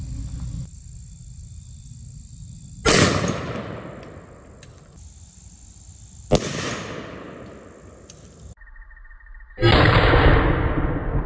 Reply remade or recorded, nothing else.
recorded